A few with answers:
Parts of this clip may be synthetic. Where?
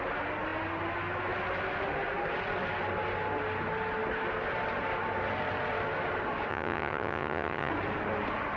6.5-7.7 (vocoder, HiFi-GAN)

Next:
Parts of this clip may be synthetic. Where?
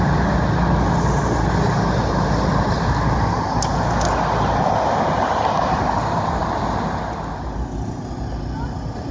none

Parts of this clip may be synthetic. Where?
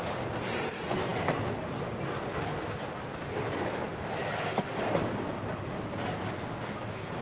none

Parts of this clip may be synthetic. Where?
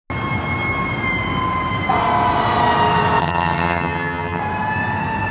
3.2-4.4 (vocoder, HiFi-GAN)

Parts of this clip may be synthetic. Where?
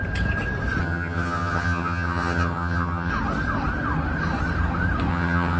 0.8-3.1 (vocoder, HiFi-GAN); 5.1-5.6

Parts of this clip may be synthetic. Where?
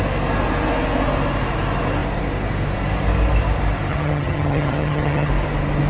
3.9-5.3 (vocoder, HiFi-GAN)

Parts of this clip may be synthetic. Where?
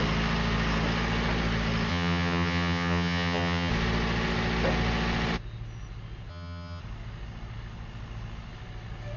1.9-3.7 (vocoder, HiFi-GAN); 6.3-6.8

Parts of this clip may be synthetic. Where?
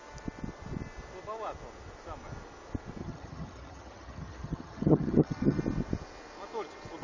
3.0-5.6 (vocoder, HiFi-GAN)